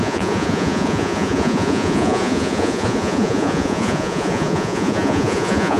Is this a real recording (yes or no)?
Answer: no